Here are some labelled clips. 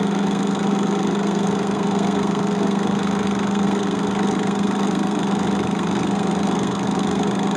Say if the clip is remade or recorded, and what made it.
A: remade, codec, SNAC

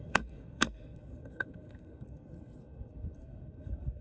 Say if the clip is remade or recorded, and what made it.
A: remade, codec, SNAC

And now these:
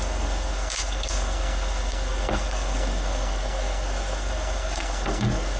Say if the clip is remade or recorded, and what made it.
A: remade, codec, SNAC